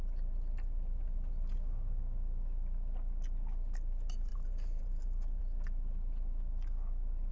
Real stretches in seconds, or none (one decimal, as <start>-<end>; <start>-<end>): 0.0-4.3; 5.4-7.3